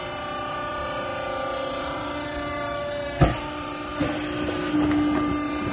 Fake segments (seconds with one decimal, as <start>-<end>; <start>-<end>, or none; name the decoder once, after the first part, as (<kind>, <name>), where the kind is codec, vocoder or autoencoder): 0.0-1.1 (vocoder, BigVGAN v2); 1.7-3.9; 5.3-5.7